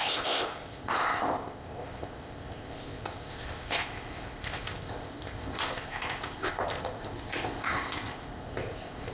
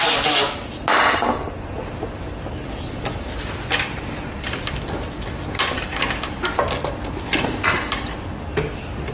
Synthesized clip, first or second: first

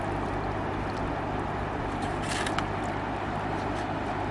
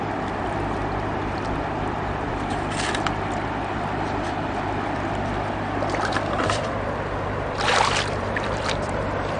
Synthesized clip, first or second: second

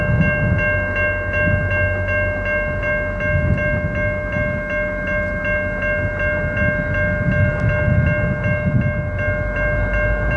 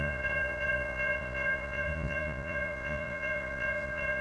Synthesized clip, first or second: second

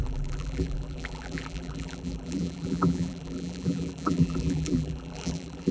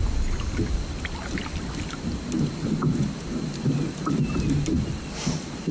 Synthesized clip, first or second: first